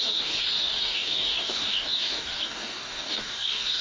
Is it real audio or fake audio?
fake